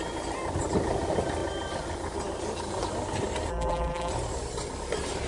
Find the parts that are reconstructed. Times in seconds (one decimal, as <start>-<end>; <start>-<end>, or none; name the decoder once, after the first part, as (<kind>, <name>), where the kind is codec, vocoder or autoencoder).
3.5-4.1 (vocoder, BigVGAN v2)